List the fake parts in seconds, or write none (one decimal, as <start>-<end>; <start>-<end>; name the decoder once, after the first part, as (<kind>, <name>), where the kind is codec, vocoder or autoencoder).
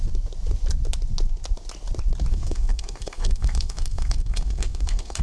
2.3-5.2 (codec, SNAC)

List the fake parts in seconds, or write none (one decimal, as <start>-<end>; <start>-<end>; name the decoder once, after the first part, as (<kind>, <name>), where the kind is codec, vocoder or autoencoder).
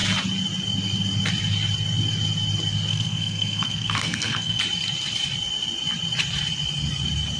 2.9-4.6 (codec, SNAC)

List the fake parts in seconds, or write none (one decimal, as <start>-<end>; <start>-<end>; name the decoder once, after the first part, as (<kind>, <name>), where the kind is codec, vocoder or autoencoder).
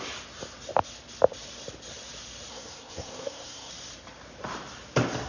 2.5-3.7 (codec, SNAC)